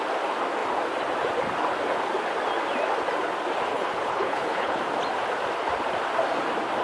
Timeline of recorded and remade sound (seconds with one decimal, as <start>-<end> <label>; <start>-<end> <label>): 0.0-3.7 recorded; 3.7-4.8 remade; 4.8-6.8 recorded